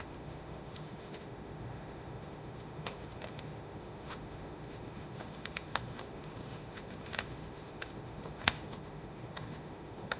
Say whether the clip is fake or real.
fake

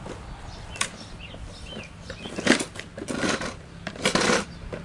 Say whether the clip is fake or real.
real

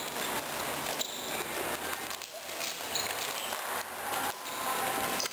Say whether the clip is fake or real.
real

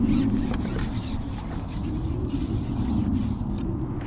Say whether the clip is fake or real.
real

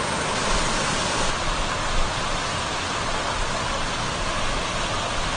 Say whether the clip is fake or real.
real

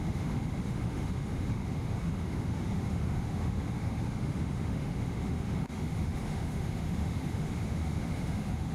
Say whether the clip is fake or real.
fake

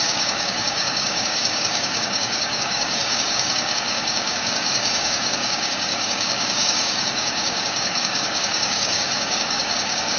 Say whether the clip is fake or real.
fake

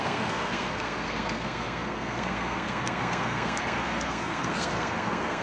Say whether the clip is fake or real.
fake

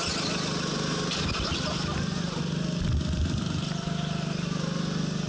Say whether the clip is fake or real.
real